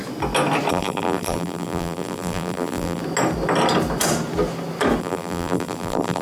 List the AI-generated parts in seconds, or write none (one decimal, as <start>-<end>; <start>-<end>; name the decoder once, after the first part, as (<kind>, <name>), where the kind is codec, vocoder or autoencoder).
0.7-3.0 (vocoder, BigVGAN v2); 5.0-6.2